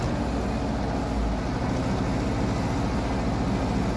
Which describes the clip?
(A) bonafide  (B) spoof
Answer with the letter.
A